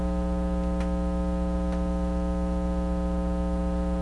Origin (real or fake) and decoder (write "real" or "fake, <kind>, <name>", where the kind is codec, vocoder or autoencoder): real